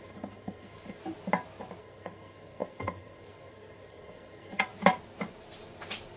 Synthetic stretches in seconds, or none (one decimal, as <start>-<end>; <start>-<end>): 0.0-1.0; 1.8-4.7